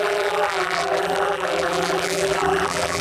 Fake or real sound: fake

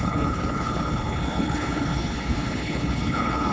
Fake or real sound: fake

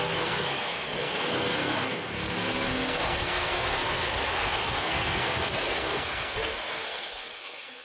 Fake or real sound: fake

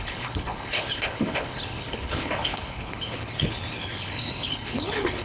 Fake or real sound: fake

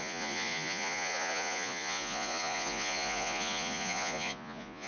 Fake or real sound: fake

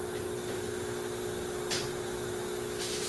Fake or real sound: real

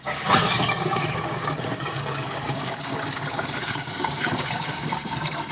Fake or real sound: fake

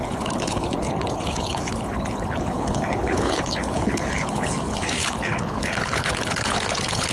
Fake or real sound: fake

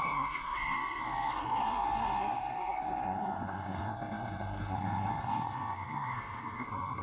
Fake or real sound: fake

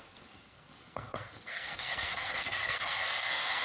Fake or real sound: fake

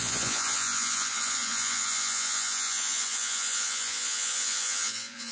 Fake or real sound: fake